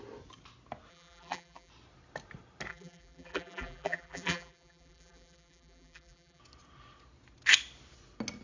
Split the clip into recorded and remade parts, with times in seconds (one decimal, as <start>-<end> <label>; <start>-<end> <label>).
0.0-0.9 recorded; 0.9-1.7 remade; 1.7-2.7 recorded; 2.7-6.4 remade; 6.4-8.4 recorded